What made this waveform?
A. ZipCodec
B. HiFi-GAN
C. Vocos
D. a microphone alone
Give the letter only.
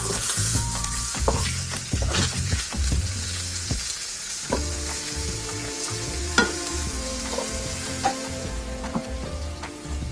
C